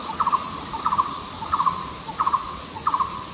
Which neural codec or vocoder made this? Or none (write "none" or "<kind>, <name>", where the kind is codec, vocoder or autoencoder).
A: vocoder, Vocos